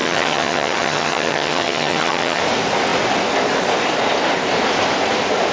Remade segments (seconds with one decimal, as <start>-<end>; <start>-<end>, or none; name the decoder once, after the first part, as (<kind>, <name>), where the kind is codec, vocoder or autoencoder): 0.0-2.4 (vocoder, HiFi-GAN)